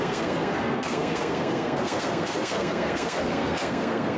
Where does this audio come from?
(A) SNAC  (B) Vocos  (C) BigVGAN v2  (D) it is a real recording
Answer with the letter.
A